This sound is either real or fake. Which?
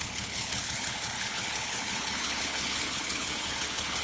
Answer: fake